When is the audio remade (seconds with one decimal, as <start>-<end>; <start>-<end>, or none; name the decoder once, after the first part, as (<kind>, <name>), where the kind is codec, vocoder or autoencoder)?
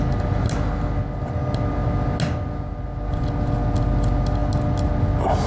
none